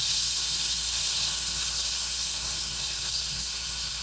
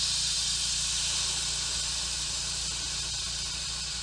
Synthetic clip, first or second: first